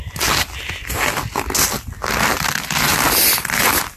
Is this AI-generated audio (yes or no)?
no